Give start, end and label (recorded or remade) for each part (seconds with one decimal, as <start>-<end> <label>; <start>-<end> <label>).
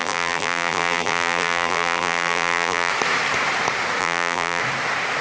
0.0-2.9 remade; 2.9-4.0 recorded; 4.0-4.6 remade; 4.6-5.2 recorded